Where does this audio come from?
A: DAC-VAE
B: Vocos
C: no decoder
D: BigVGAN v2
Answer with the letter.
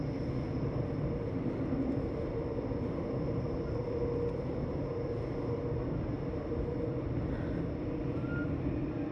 C